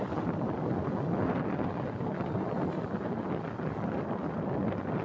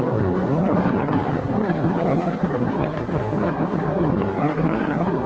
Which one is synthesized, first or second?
second